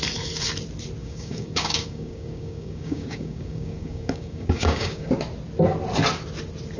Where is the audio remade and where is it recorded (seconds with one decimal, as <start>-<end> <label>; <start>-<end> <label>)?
0.0-1.0 recorded; 1.0-5.1 remade; 5.1-6.8 recorded